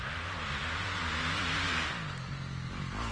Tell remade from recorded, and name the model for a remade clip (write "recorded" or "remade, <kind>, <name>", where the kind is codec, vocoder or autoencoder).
recorded